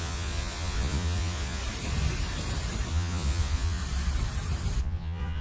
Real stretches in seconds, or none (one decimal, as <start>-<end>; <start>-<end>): 1.6-2.9; 3.8-4.8